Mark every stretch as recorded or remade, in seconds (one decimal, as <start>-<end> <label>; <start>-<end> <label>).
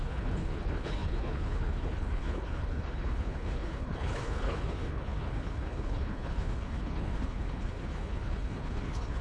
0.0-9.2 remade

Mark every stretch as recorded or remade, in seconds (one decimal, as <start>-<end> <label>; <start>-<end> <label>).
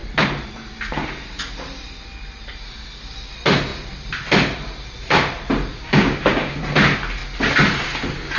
0.0-5.7 recorded; 5.7-6.6 remade; 6.6-8.4 recorded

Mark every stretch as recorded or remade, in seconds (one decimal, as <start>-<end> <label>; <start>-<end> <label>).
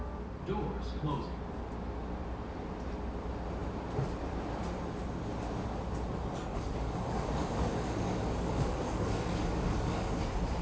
0.0-6.5 recorded; 6.5-10.2 remade; 10.2-10.6 recorded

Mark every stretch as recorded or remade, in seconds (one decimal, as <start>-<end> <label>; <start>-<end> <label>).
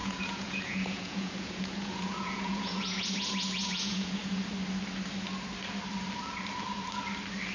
0.0-4.5 remade; 4.5-7.5 recorded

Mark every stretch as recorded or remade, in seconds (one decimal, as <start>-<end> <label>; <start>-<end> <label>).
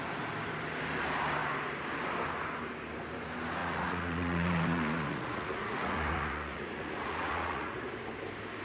0.0-3.6 recorded; 3.6-7.9 remade; 7.9-8.6 recorded